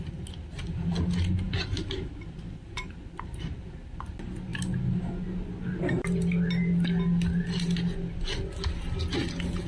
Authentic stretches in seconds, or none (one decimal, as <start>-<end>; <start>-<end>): 0.0-9.7